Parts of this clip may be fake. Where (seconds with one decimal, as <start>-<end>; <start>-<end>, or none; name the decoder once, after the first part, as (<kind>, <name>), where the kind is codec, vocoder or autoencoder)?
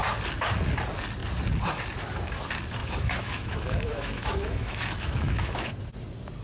2.8-5.7 (autoencoder, DAC-VAE)